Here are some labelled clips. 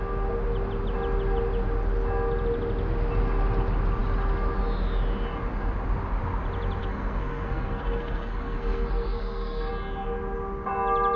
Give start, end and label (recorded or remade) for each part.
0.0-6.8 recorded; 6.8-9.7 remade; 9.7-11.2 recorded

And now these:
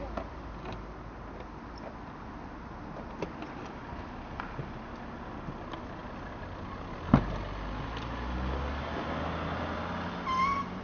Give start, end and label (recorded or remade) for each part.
0.0-10.8 recorded

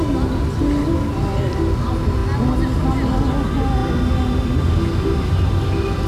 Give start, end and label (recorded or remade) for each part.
0.0-6.1 recorded

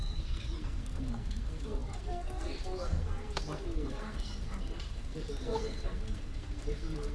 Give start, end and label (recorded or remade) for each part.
0.0-7.1 remade

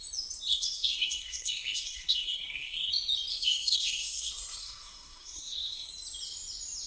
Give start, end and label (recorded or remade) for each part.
0.0-0.5 recorded; 0.5-2.9 remade; 2.9-3.3 recorded; 3.3-5.9 remade; 5.9-6.9 recorded

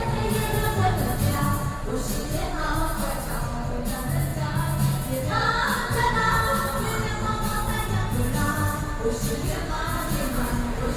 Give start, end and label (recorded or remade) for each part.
0.0-11.0 recorded

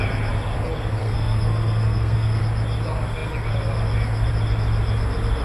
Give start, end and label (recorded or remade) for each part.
0.0-1.0 recorded; 1.0-2.4 remade; 2.4-5.4 recorded